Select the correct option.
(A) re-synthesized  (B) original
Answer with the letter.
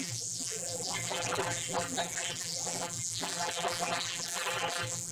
A